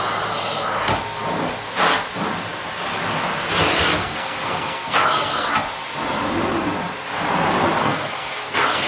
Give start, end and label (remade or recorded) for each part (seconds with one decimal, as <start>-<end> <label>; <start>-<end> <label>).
0.0-4.0 recorded; 4.0-5.5 remade; 5.5-7.8 recorded; 7.8-8.9 remade